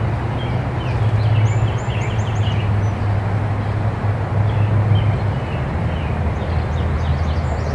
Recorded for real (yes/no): yes